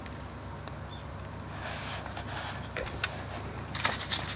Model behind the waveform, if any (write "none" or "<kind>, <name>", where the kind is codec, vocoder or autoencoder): none